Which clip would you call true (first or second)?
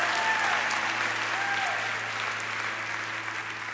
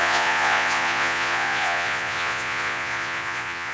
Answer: first